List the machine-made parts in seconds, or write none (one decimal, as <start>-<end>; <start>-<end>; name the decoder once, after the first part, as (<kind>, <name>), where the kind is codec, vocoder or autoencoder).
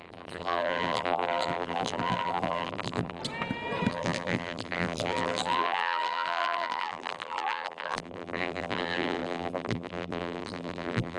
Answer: 0.0-3.2 (vocoder, BigVGAN v2); 3.9-11.2